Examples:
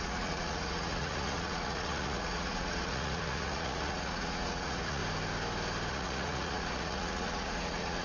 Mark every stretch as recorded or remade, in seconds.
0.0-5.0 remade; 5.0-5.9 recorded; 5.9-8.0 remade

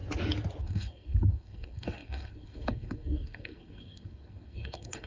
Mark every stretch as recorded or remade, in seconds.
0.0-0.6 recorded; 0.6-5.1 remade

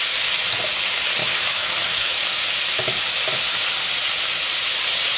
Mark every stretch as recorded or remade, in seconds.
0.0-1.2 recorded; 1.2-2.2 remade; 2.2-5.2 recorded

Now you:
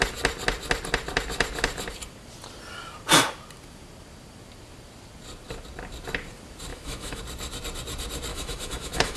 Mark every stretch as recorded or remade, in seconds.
0.0-6.7 recorded; 6.7-7.2 remade; 7.2-8.3 recorded; 8.3-9.2 remade

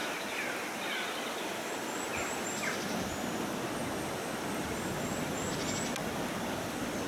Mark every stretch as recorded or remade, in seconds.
0.0-0.8 remade; 0.8-7.1 recorded

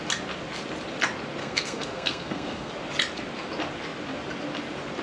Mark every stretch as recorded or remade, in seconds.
0.0-1.4 recorded; 1.4-2.7 remade; 2.7-5.0 recorded

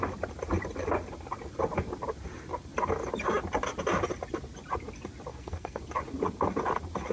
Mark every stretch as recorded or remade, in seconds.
0.0-5.3 recorded; 5.3-5.8 remade; 5.8-7.1 recorded